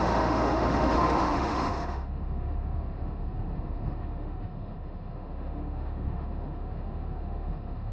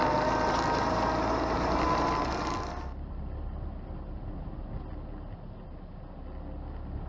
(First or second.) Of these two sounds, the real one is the second